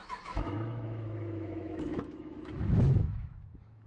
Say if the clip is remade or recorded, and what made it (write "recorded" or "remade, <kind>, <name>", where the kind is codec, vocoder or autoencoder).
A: remade, autoencoder, DAC-VAE